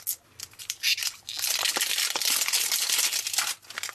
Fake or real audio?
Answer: real